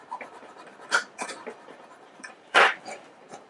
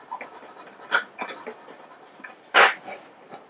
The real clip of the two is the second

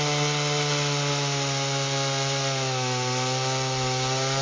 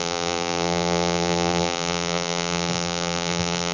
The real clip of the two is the first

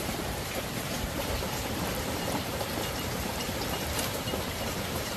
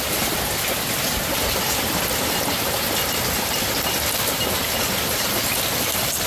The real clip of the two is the second